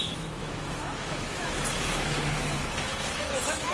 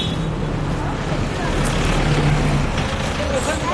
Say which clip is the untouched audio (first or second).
second